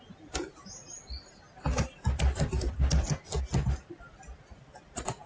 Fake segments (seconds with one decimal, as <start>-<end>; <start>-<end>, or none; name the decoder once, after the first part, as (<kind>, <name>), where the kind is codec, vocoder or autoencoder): none